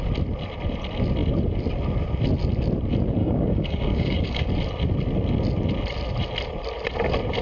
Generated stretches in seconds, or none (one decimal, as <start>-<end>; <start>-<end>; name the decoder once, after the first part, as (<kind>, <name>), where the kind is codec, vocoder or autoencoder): 3.2-4.5 (codec, DAC)